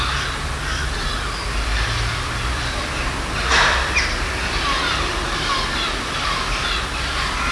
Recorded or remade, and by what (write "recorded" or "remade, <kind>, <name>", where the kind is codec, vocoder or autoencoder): recorded